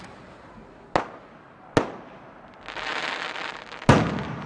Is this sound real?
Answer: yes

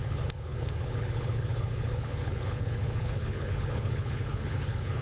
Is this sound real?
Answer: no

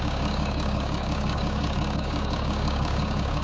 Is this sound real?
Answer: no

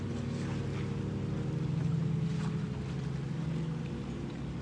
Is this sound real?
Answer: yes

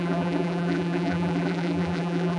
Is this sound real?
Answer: no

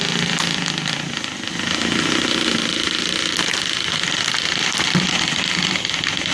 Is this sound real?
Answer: yes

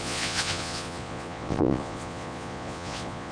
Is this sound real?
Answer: no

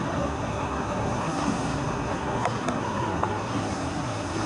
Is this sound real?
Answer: no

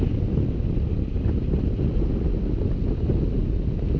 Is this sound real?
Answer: yes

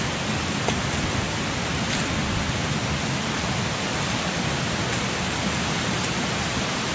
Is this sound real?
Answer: yes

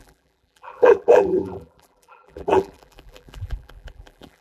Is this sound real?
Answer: no